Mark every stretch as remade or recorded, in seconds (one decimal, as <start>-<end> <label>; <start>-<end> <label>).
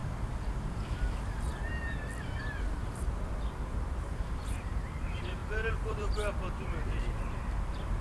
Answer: 0.0-0.6 recorded; 0.6-1.5 remade; 1.5-2.7 recorded; 2.7-8.0 remade